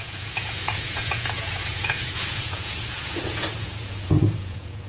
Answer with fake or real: fake